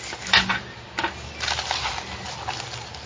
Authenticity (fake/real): real